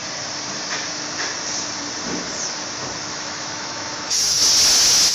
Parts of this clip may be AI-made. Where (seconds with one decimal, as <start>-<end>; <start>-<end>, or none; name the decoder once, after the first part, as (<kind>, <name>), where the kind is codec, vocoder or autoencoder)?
3.1-4.4 (autoencoder, DAC-VAE)